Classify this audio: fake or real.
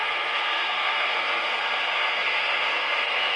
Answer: fake